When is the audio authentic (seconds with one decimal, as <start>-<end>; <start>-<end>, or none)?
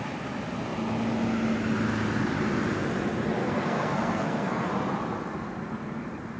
0.0-3.4; 4.7-6.4